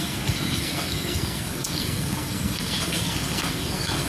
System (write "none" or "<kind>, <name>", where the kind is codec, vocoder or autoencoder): codec, SNAC